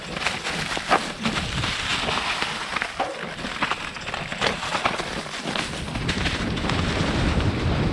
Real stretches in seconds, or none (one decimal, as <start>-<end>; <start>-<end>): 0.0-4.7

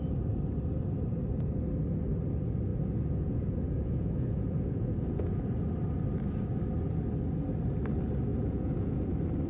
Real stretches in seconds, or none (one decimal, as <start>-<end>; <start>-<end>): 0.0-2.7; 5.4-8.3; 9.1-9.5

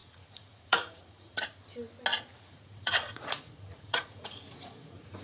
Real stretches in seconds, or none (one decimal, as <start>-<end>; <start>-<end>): 1.6-2.1

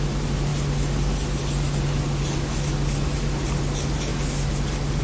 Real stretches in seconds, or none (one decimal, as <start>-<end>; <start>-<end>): 0.0-5.0